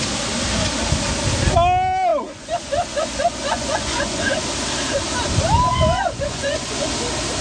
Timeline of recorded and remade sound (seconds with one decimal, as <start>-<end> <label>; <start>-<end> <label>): 0.0-2.1 recorded; 2.1-4.4 remade; 4.4-5.7 recorded; 5.7-6.9 remade; 6.9-7.4 recorded